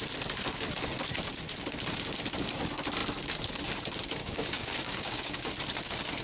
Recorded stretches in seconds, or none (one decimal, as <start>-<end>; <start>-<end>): 0.0-4.2; 5.5-6.2